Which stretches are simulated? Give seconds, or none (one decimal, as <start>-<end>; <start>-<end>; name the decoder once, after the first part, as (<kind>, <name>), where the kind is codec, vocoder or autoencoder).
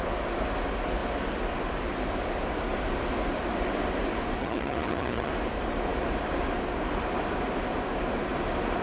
4.4-5.3 (vocoder, HiFi-GAN)